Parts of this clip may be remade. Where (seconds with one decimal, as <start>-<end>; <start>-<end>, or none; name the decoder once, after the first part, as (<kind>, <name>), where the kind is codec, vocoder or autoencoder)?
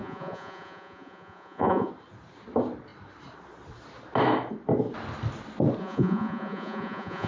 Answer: 0.0-1.9 (vocoder, Vocos); 5.8-7.3